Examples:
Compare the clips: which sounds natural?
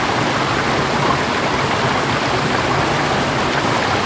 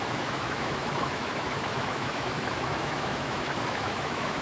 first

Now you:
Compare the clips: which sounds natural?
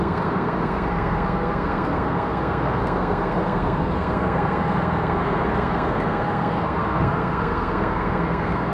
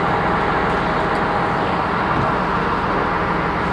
second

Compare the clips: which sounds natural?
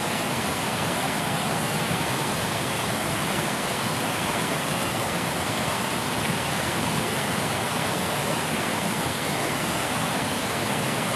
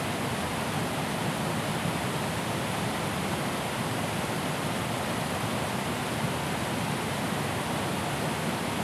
second